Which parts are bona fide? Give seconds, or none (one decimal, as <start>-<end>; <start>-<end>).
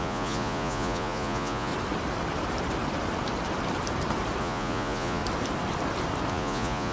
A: 1.7-4.4; 5.2-6.3